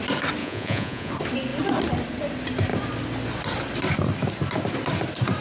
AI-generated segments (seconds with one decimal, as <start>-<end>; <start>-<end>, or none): 0.4-1.1